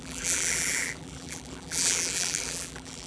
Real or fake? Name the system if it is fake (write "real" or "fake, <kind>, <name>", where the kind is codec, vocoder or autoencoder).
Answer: fake, vocoder, BigVGAN v2